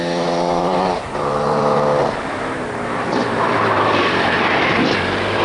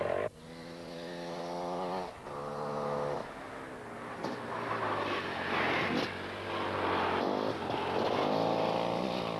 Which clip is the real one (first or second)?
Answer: second